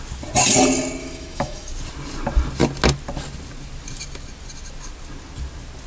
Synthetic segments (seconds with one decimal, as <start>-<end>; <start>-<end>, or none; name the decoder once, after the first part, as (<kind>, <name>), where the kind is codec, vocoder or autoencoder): 1.0-1.7 (autoencoder, DAC-VAE)